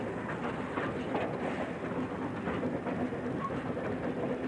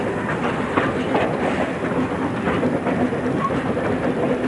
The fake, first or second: second